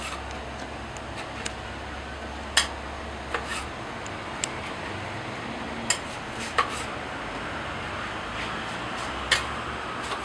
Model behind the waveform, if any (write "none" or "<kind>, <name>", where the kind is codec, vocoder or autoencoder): none